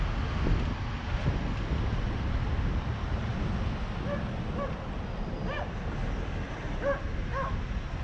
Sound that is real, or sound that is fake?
real